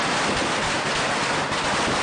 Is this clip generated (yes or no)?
no